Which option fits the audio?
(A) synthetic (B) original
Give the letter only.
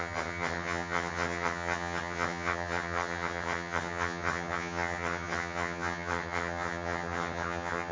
A